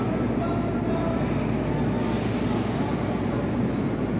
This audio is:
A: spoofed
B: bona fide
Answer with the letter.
B